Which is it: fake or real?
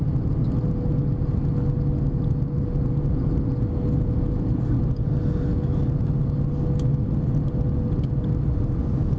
real